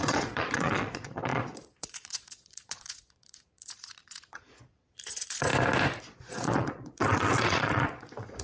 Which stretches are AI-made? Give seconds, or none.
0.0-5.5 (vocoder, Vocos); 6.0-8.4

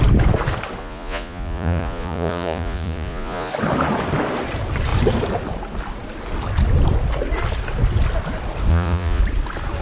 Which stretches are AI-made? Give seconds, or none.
0.8-3.5 (vocoder, Vocos); 8.7-9.2

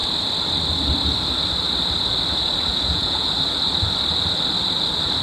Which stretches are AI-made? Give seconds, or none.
2.7-3.3 (vocoder, Vocos)

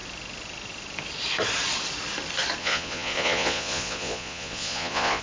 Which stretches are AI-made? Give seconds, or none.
2.6-5.2 (vocoder, Vocos)

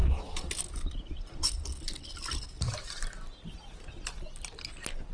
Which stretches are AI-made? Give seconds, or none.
none

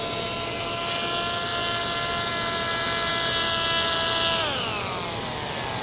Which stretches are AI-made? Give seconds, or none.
none